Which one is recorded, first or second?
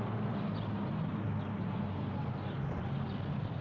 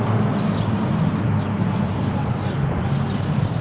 first